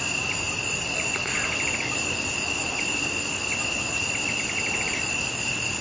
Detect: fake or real real